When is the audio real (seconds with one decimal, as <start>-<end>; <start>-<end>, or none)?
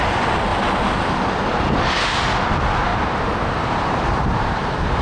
0.0-2.9